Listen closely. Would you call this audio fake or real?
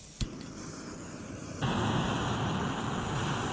real